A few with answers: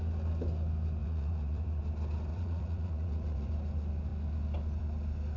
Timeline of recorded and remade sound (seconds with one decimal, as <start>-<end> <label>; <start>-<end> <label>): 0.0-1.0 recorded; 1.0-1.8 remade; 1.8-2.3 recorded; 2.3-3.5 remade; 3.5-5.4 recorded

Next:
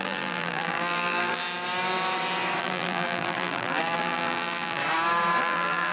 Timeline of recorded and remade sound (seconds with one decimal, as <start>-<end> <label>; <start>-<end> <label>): 0.0-1.4 remade; 1.4-2.6 recorded; 2.6-4.8 remade; 4.8-5.4 recorded; 5.4-5.9 remade

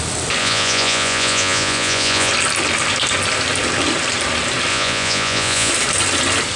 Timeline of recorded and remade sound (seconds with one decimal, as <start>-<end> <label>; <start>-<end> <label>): 0.0-0.4 recorded; 0.4-2.3 remade; 2.3-4.7 recorded; 4.7-5.7 remade; 5.7-6.6 recorded

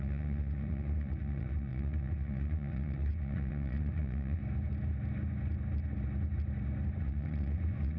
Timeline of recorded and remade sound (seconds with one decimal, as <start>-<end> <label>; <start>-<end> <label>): 0.0-4.4 remade; 4.4-7.0 recorded; 7.0-8.0 remade